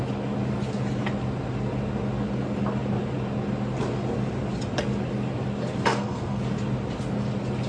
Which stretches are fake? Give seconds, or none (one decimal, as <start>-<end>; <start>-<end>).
5.9-6.4